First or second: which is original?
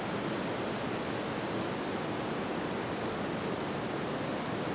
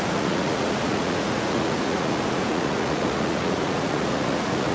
first